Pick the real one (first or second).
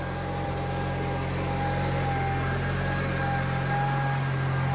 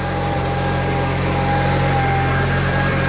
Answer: first